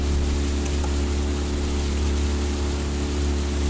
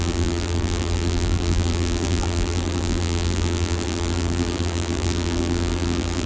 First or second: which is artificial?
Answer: second